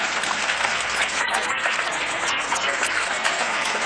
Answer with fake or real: fake